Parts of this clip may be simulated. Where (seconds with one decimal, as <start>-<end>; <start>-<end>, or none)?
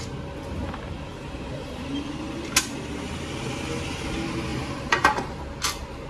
1.1-1.9; 4.5-5.4